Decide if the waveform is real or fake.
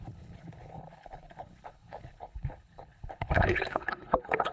fake